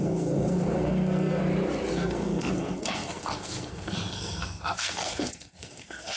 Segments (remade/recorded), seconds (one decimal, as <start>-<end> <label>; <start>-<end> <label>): 0.0-1.4 remade; 1.4-1.9 recorded; 1.9-6.2 remade